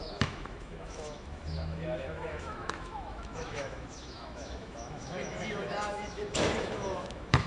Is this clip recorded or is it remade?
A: remade